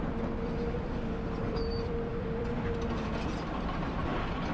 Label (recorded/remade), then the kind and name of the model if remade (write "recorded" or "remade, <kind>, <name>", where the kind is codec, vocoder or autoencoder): remade, vocoder, BigVGAN v2